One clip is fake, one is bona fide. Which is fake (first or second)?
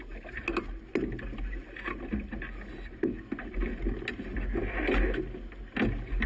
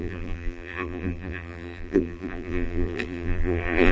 second